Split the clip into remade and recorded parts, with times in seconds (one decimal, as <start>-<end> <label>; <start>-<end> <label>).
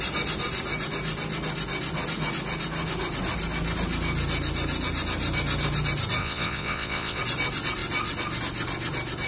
0.0-6.2 recorded; 6.2-7.2 remade; 7.2-9.3 recorded